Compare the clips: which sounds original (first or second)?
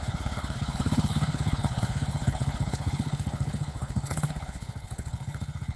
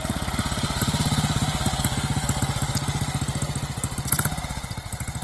second